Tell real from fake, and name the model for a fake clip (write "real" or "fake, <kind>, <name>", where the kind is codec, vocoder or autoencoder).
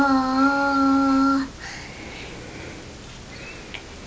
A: real